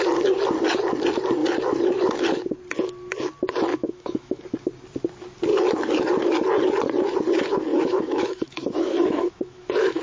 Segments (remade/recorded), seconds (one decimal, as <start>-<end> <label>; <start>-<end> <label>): 0.0-3.7 recorded; 3.7-4.4 remade; 4.4-7.7 recorded; 7.7-10.0 remade